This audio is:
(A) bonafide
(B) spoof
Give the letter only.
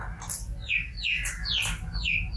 A